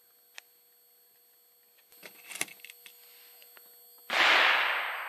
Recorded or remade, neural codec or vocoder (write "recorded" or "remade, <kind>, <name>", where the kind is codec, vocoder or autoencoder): recorded